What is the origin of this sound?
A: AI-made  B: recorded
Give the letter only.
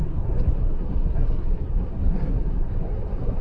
A